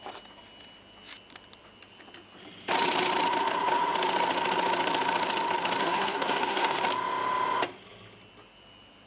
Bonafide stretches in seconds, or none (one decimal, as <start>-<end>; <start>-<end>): 0.0-5.8; 6.8-9.1